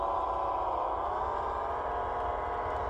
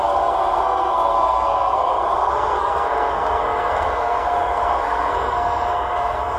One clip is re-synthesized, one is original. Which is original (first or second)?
first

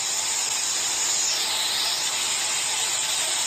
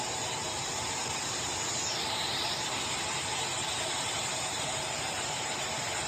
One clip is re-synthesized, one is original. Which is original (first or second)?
first